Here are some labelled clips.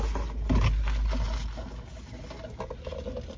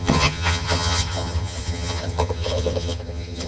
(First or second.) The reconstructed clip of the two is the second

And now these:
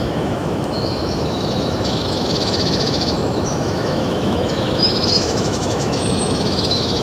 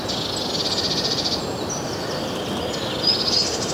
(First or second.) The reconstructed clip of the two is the first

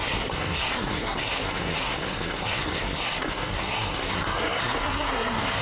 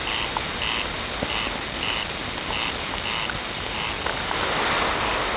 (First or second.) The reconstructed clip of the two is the first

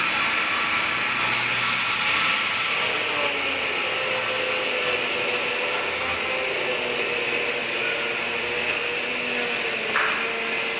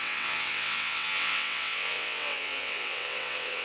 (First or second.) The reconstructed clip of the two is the second